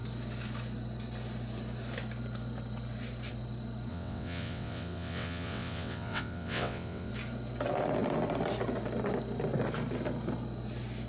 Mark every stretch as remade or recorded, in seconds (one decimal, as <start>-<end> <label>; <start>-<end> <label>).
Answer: 0.0-3.9 recorded; 3.9-7.1 remade; 7.1-11.1 recorded